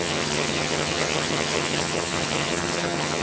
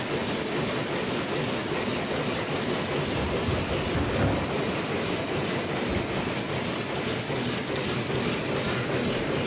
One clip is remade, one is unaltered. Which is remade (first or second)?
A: first